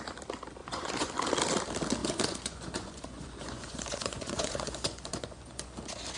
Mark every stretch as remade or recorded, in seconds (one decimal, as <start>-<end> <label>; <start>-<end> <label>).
0.0-0.6 recorded; 0.6-1.1 remade; 1.1-2.0 recorded; 2.0-5.7 remade; 5.7-6.2 recorded